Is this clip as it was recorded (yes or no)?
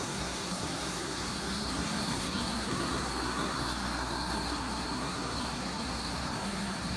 no